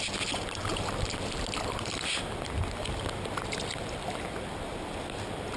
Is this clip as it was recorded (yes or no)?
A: yes